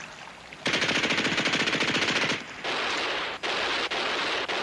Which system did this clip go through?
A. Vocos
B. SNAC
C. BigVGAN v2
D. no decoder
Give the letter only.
D